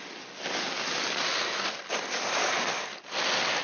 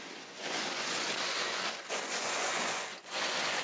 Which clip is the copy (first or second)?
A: second